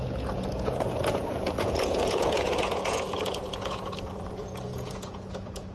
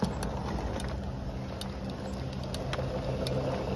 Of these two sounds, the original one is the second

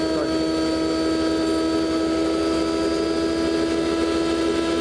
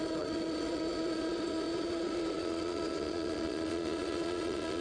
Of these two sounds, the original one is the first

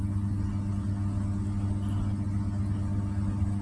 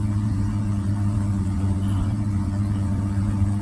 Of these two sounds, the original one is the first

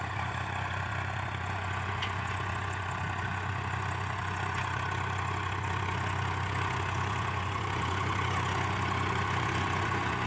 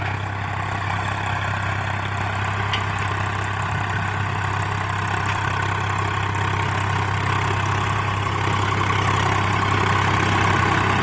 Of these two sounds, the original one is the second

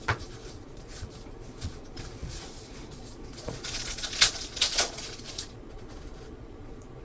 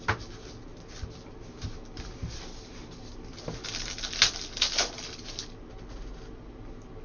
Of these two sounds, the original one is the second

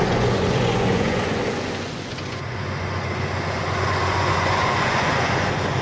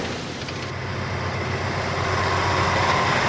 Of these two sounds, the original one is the second